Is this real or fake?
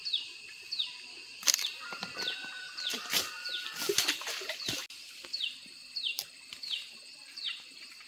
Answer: real